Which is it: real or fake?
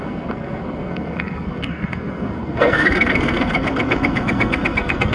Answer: fake